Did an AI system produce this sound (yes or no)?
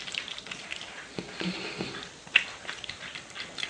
no